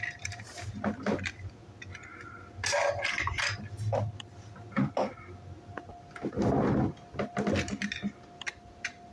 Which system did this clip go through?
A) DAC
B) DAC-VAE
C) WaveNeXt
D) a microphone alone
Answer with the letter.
D